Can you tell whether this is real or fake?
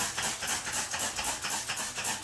real